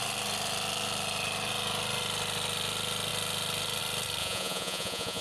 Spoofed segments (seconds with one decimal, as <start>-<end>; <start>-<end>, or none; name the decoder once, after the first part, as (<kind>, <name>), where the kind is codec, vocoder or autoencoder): 4.2-5.2 (vocoder, Vocos)